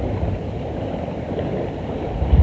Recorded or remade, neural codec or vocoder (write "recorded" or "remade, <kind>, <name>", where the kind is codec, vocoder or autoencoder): recorded